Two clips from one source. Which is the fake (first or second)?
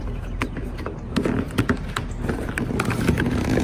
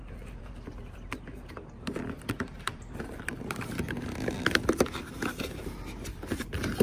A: second